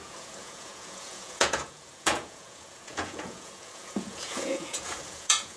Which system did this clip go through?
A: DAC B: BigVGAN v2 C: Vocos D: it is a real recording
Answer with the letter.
C